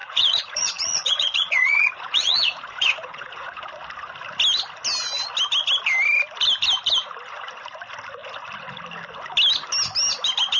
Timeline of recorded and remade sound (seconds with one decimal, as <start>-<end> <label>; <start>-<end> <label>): 0.0-3.7 remade; 3.7-10.6 recorded